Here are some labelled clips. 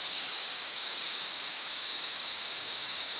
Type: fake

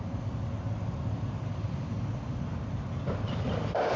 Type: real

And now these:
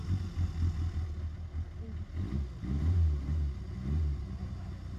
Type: real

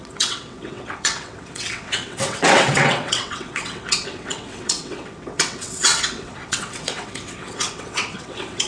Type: fake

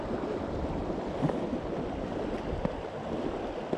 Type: real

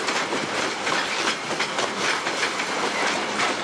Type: real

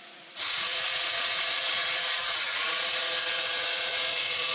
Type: fake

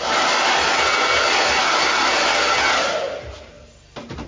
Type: real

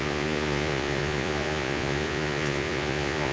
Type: fake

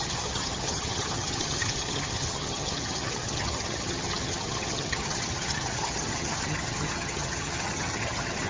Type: fake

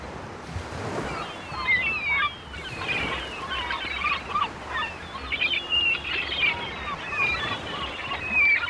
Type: real